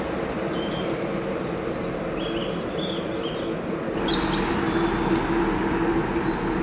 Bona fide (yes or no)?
yes